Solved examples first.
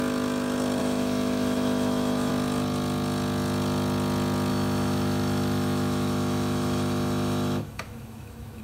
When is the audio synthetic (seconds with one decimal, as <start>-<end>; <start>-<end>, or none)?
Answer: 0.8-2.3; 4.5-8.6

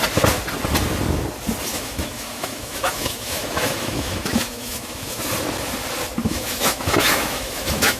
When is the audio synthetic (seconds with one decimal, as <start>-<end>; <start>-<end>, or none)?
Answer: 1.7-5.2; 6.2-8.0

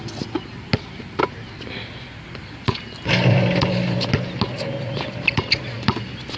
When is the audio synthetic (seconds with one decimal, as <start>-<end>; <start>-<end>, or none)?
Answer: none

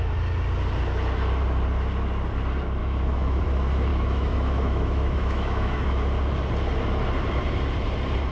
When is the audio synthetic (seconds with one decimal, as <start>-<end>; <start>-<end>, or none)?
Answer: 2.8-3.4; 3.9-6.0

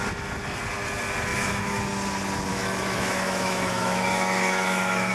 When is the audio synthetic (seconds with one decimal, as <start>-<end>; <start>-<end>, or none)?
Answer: 1.3-1.8; 2.5-5.1

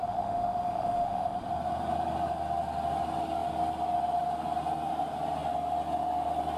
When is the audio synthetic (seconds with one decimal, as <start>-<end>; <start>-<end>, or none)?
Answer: 0.0-1.5